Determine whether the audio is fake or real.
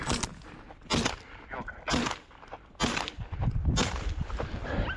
real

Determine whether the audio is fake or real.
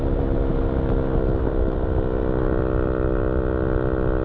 real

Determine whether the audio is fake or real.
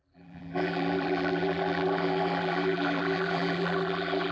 fake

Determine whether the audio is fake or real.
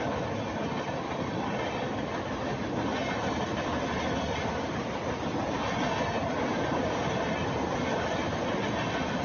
real